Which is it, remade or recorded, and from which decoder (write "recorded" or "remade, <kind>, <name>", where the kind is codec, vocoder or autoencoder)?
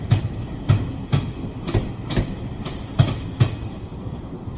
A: recorded